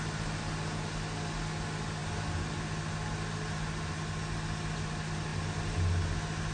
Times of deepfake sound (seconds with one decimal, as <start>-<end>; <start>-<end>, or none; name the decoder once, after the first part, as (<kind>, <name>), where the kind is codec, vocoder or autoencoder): none

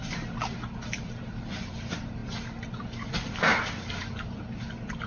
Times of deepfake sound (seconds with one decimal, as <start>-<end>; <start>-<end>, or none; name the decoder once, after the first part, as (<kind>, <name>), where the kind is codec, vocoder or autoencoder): none